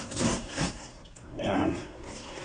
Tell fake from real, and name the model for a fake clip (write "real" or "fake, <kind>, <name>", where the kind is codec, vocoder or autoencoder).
fake, codec, SNAC